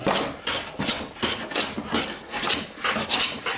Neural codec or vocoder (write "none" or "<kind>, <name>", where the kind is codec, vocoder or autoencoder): none